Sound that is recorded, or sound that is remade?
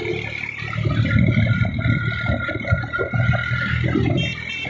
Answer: recorded